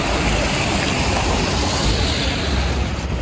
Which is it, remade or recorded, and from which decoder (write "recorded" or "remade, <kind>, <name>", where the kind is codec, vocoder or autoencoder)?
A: remade, vocoder, BigVGAN v2